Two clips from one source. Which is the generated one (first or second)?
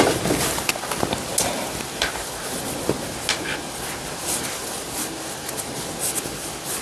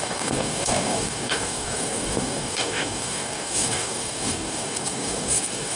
second